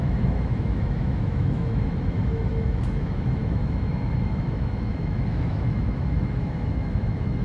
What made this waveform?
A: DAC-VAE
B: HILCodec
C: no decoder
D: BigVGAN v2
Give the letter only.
A